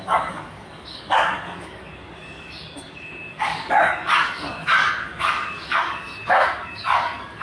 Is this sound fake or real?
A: fake